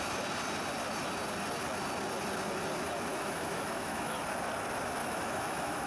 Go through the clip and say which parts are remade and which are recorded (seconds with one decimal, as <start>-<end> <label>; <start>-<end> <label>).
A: 0.0-3.1 recorded; 3.1-4.2 remade; 4.2-5.0 recorded; 5.0-5.9 remade